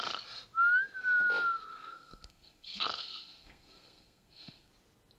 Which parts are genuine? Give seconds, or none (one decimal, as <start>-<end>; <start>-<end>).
0.0-1.7; 4.7-5.2